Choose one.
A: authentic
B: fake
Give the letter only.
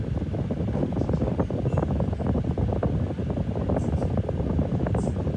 A